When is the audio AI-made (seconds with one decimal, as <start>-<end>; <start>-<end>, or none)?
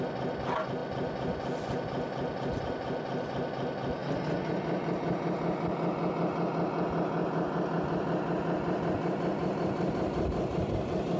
7.2-7.8